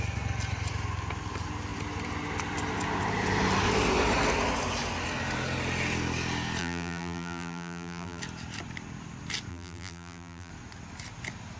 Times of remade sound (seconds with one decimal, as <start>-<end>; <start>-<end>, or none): 6.6-8.2; 9.5-10.5

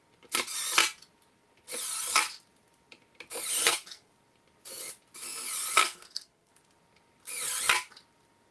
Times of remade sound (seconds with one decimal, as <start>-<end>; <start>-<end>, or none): 3.6-4.1; 5.8-6.5

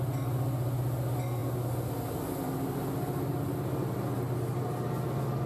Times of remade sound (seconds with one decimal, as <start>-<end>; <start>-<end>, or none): none

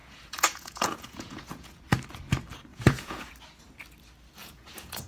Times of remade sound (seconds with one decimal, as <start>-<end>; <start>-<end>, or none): 0.0-1.8; 2.7-3.3; 4.4-5.1

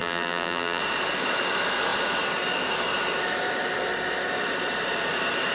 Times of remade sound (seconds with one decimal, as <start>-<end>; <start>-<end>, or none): 0.0-0.8

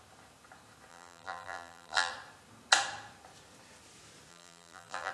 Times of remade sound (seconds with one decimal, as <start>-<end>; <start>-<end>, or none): 0.9-2.1; 4.3-5.1

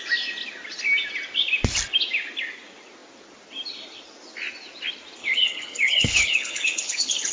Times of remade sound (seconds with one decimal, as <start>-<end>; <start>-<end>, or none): 5.2-7.3